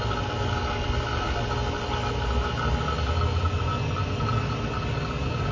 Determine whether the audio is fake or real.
real